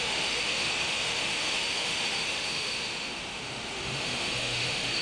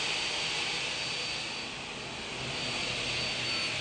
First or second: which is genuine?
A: second